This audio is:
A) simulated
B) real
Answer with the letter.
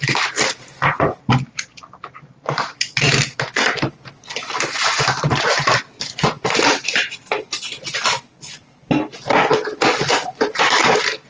A